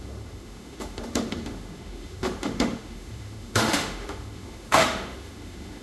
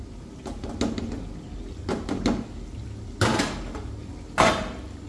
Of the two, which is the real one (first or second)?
second